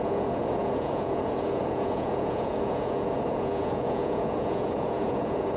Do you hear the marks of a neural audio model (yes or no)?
yes